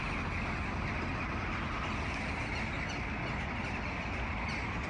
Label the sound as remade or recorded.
recorded